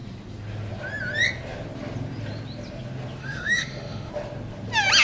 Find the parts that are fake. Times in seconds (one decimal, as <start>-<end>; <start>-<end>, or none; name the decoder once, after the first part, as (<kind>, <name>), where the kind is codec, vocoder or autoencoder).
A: 3.2-4.1 (autoencoder, DAC-VAE)